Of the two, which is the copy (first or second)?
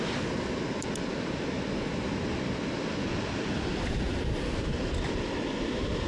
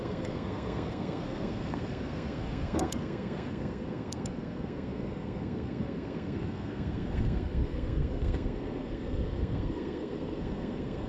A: second